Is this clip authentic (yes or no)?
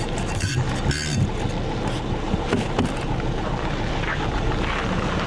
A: yes